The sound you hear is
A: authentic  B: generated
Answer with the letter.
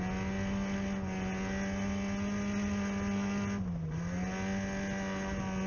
A